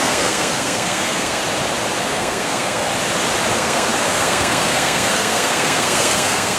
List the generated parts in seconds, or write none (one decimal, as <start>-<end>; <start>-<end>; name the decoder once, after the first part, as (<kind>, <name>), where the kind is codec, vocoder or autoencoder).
0.0-1.4 (codec, SNAC); 2.0-2.9; 3.5-6.6